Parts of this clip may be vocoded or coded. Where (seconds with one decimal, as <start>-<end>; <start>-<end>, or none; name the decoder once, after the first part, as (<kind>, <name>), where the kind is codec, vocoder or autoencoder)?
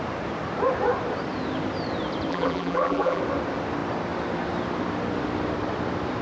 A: 2.3-3.2 (vocoder, BigVGAN v2)